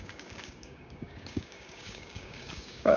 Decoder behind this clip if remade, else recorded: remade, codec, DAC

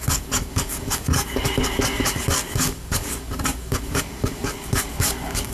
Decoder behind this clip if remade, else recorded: remade, codec, DAC